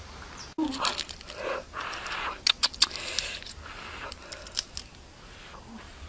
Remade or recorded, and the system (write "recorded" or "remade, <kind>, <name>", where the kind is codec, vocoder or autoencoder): recorded